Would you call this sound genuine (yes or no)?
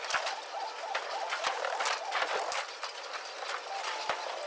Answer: yes